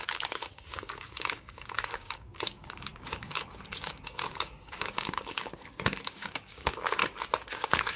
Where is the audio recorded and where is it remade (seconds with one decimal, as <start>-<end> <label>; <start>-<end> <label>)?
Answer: 0.0-7.0 remade; 7.0-7.5 recorded; 7.5-8.0 remade